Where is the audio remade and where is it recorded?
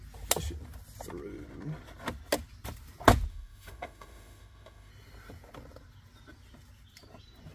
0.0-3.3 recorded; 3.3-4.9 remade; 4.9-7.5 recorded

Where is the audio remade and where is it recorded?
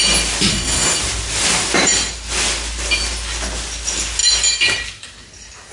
0.0-0.5 recorded; 0.5-1.0 remade; 1.0-5.7 recorded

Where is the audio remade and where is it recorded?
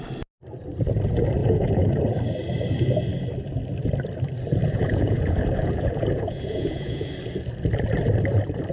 0.0-1.4 recorded; 1.4-2.0 remade; 2.0-4.6 recorded; 4.6-7.1 remade; 7.1-8.7 recorded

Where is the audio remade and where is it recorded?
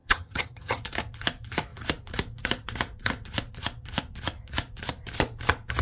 0.0-0.8 remade; 0.8-5.8 recorded